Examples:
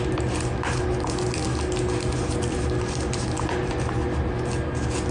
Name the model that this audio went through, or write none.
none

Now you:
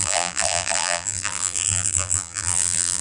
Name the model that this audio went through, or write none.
vocoder, BigVGAN v2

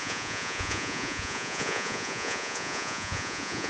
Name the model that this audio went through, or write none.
vocoder, Vocos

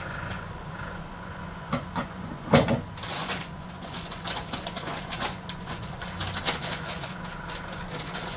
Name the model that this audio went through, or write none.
vocoder, Vocos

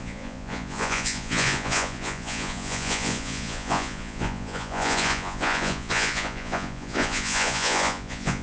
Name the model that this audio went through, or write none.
vocoder, Vocos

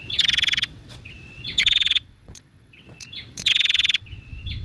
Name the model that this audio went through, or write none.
vocoder, WaveNeXt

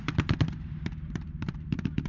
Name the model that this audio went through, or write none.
vocoder, BigVGAN v2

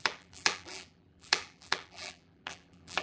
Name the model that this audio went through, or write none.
vocoder, BigVGAN v2